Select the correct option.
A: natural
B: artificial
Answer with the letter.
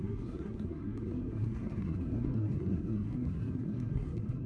B